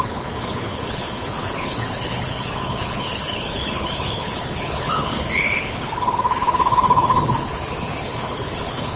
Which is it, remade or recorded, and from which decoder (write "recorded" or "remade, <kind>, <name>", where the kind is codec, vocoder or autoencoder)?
remade, codec, HILCodec